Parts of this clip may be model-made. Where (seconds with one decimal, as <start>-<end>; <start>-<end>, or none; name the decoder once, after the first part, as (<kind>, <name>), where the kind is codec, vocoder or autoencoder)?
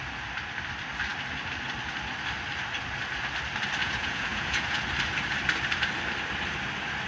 3.8-4.8 (vocoder, Vocos)